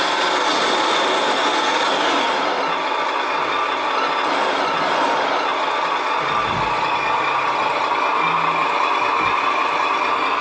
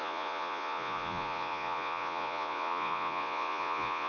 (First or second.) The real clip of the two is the first